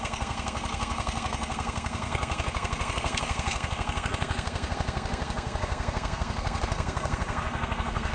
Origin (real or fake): fake